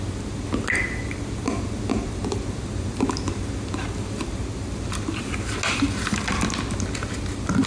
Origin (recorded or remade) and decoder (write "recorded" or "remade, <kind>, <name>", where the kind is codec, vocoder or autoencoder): recorded